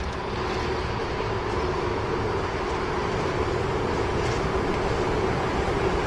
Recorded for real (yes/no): yes